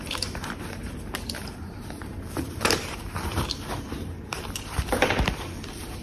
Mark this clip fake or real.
fake